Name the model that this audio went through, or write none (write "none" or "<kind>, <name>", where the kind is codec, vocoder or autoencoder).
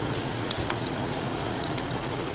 vocoder, Vocos